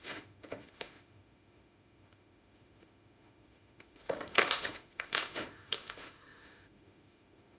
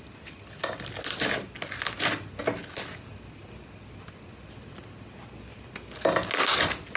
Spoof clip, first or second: first